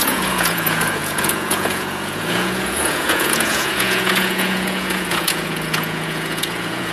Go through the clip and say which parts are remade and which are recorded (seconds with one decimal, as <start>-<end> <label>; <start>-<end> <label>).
0.0-6.9 remade